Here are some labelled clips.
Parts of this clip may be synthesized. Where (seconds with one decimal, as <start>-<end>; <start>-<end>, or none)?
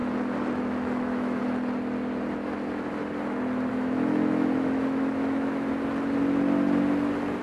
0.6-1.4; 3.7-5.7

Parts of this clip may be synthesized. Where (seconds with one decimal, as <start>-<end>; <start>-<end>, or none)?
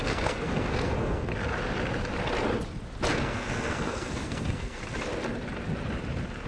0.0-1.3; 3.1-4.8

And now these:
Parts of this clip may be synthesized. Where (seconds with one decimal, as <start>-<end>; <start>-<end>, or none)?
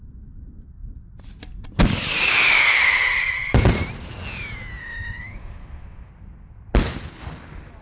4.8-6.1